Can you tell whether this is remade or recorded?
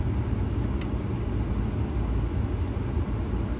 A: recorded